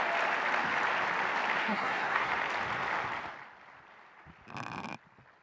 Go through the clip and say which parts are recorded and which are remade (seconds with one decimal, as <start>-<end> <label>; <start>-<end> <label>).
0.0-1.6 recorded; 1.6-2.3 remade; 2.3-5.4 recorded